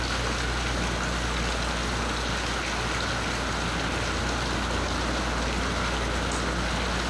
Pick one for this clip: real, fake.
real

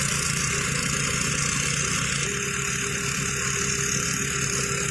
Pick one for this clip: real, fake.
real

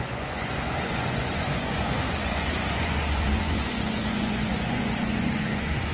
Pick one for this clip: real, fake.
fake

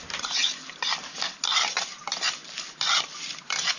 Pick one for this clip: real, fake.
real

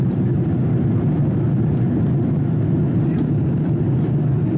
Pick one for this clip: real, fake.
real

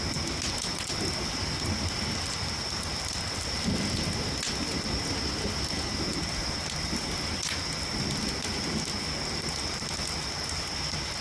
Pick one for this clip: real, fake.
real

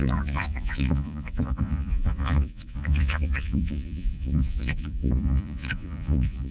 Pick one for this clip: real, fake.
fake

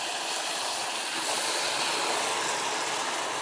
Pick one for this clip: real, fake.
real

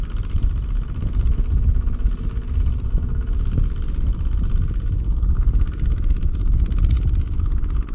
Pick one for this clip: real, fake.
real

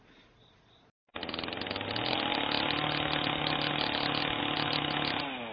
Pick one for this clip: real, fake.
real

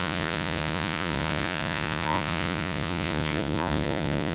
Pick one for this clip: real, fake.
fake